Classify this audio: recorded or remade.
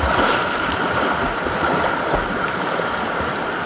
recorded